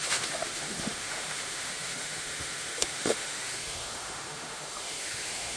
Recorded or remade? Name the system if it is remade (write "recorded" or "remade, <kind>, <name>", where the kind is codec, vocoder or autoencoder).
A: remade, autoencoder, DAC-VAE